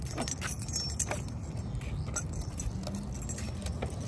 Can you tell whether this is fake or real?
real